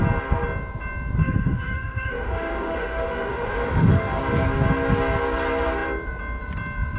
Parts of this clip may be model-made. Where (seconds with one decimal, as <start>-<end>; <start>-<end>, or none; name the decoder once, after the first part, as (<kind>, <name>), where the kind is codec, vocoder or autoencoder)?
1.2-4.2 (autoencoder, DAC-VAE)